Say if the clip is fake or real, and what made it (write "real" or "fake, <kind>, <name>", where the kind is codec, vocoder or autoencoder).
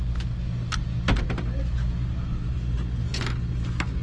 real